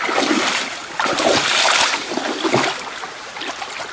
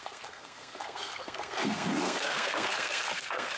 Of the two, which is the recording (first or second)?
first